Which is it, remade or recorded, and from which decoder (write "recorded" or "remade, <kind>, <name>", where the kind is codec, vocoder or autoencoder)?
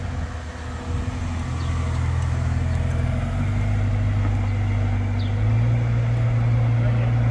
recorded